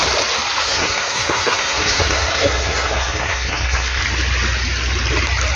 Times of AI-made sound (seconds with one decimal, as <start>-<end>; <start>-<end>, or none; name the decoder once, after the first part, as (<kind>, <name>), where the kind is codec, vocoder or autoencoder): 0.6-4.0 (codec, SNAC)